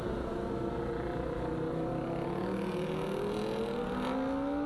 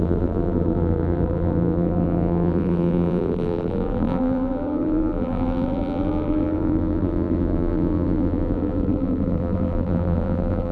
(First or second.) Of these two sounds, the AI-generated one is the second